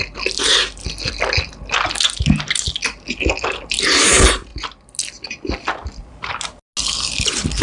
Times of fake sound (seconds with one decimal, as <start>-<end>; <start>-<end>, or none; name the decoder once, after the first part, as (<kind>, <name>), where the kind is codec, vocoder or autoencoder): none